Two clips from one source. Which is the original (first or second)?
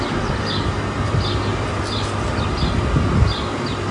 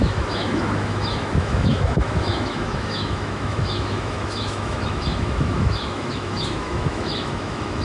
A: first